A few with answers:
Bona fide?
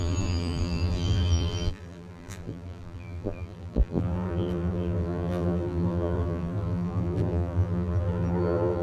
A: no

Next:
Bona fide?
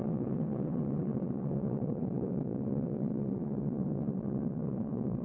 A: no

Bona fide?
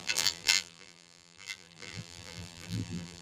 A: no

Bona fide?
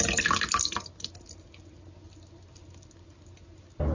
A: yes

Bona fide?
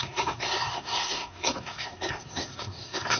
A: no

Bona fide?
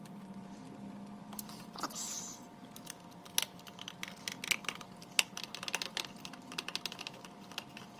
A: yes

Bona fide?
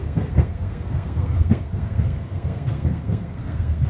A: no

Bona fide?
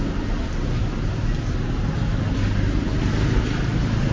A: yes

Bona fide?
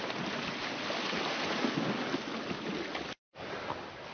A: yes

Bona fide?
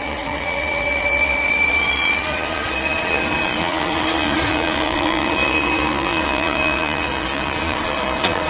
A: no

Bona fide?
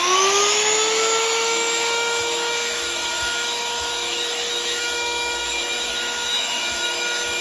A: no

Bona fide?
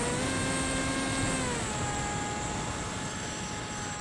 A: yes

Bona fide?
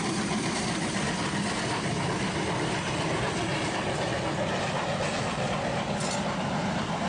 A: yes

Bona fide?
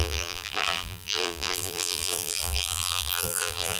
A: no